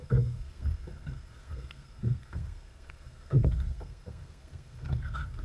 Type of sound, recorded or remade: remade